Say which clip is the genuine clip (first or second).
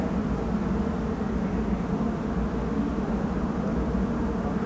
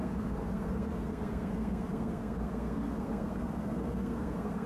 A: first